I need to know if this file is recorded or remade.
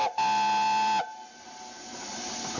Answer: recorded